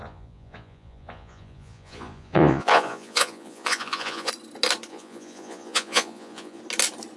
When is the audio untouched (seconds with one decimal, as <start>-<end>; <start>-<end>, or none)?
4.3-4.9; 6.6-7.2